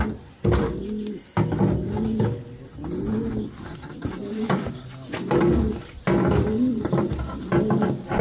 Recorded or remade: recorded